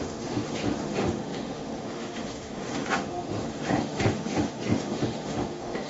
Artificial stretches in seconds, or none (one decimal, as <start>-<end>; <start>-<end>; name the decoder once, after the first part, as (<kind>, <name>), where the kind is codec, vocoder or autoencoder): 0.0-5.9 (autoencoder, DAC-VAE)

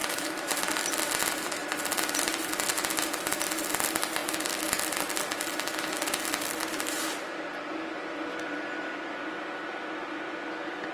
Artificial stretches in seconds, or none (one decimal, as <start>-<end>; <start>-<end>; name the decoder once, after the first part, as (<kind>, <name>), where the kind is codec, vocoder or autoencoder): 0.0-0.6 (vocoder, BigVGAN v2); 1.6-2.2